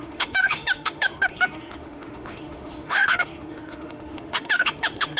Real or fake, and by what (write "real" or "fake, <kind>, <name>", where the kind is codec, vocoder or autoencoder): fake, autoencoder, DAC-VAE